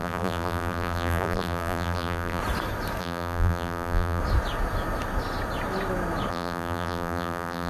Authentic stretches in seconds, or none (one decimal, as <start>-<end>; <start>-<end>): 2.4-3.0; 4.2-6.3